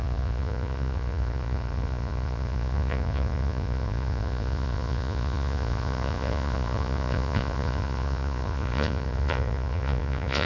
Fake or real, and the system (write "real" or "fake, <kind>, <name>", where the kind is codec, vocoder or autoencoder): fake, vocoder, Vocos